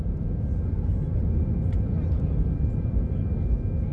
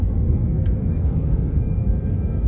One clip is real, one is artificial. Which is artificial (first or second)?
second